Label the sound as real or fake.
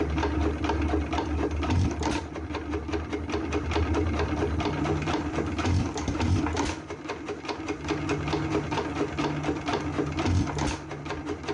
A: real